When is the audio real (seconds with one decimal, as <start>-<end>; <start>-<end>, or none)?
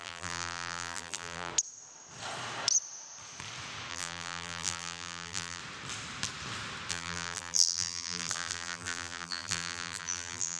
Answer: 1.5-3.9; 5.6-6.9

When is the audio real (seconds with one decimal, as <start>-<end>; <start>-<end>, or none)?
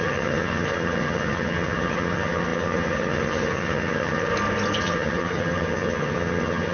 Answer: 4.3-4.8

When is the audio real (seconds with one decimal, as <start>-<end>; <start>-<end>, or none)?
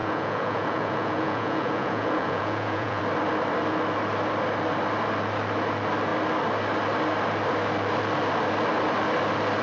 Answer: 3.0-9.6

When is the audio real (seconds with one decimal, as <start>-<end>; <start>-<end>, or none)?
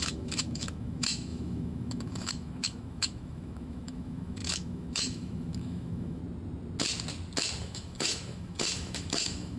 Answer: 6.2-7.6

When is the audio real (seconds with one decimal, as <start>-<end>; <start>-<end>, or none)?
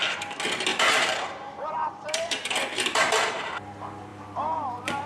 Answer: 0.0-0.7; 3.5-4.1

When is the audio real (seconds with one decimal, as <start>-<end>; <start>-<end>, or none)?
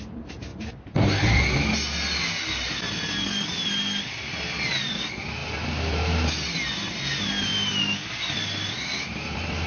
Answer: 0.0-9.7